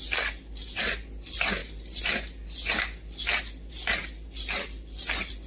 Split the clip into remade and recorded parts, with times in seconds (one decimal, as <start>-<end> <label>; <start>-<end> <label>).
0.0-5.5 recorded